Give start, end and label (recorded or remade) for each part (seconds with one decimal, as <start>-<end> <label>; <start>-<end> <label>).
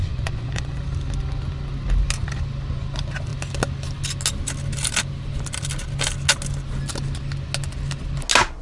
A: 0.0-0.8 remade; 0.8-8.6 recorded